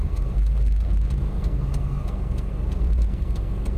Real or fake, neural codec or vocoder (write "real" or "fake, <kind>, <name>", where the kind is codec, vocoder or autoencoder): fake, codec, SNAC